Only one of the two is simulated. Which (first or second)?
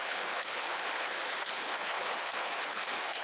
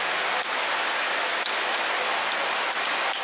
first